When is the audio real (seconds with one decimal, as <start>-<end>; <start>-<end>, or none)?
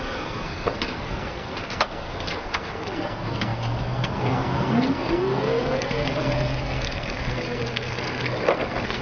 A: none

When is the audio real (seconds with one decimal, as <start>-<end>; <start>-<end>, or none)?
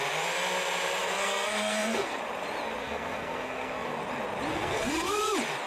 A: 0.0-1.0; 2.2-2.8; 4.0-4.5; 5.2-5.7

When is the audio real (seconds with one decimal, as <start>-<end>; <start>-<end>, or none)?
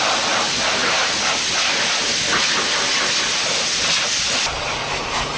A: 0.0-5.4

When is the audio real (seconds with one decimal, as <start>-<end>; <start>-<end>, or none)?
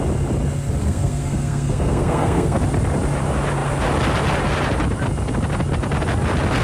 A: 0.0-0.8; 2.6-6.6